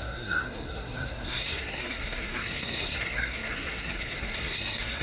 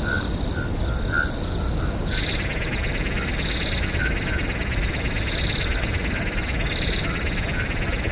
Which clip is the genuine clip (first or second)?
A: second